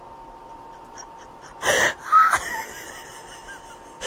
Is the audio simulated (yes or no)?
no